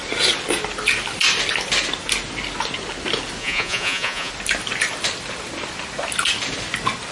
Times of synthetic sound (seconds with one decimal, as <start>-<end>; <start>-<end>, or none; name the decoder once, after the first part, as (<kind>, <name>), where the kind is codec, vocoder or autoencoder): 3.4-4.3 (vocoder, Vocos)